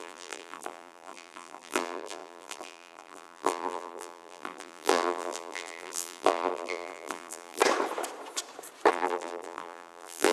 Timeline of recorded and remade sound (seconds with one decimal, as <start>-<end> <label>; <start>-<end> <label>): 0.0-7.6 remade; 7.6-8.9 recorded; 8.9-10.3 remade